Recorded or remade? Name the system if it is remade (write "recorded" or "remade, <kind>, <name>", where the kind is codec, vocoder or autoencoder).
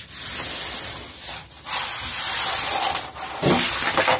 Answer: recorded